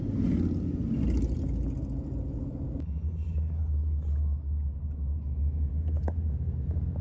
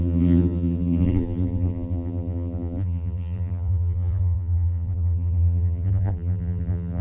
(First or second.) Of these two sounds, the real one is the first